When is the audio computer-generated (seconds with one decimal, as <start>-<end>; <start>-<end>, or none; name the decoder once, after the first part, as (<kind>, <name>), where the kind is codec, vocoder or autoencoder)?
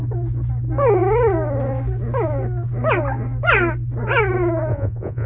4.7-5.3 (vocoder, Vocos)